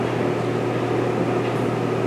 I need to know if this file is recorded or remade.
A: recorded